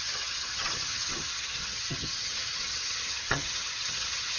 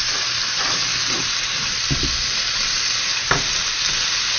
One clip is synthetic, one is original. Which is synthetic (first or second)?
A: first